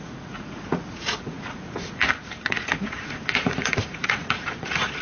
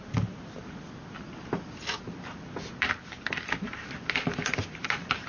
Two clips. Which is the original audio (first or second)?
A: second